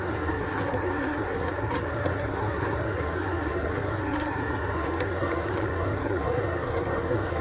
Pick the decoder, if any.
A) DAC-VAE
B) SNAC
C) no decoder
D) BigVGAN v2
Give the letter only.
B